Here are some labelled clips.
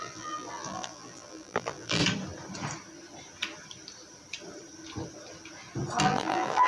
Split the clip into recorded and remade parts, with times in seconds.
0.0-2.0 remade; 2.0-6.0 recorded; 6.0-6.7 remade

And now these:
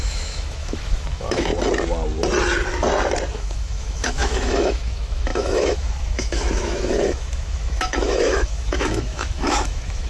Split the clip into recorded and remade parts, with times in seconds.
0.0-1.5 remade; 1.5-3.3 recorded; 3.3-10.1 remade